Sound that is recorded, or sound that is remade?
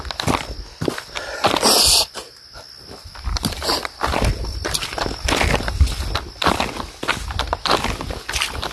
recorded